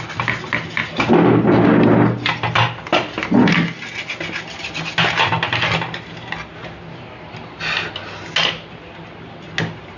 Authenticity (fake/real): real